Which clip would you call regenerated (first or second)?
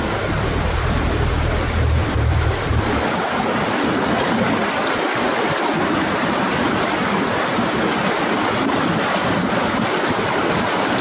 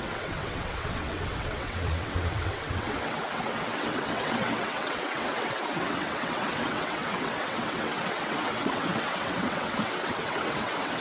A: second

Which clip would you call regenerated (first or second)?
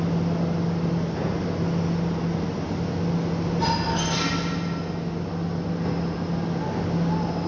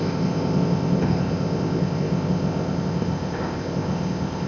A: second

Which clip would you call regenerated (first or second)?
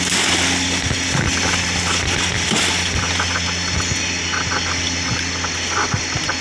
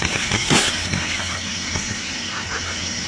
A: second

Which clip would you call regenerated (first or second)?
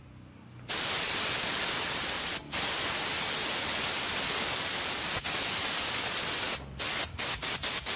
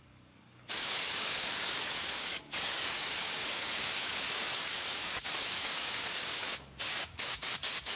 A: second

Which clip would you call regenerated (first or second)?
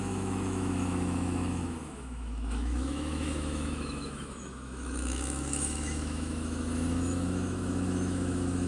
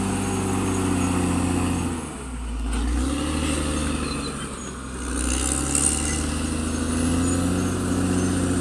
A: first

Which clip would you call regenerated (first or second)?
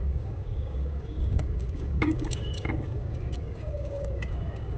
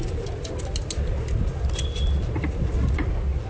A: first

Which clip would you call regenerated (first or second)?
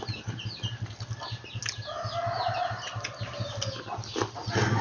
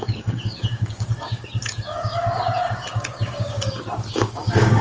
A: second